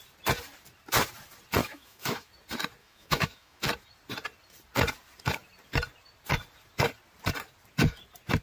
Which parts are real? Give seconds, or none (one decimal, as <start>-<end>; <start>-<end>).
0.0-1.6; 2.3-2.8; 3.6-8.4